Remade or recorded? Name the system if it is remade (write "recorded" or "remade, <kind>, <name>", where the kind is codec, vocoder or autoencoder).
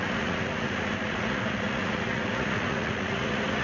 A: remade, vocoder, Vocos